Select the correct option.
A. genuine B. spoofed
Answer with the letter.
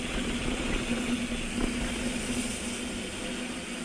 A